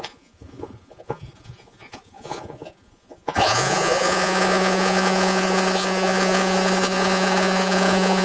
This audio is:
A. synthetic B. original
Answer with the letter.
A